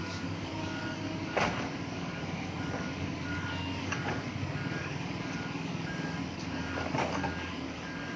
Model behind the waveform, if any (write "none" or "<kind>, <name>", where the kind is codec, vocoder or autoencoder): codec, DAC